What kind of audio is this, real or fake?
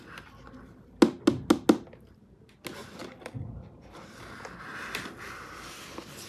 real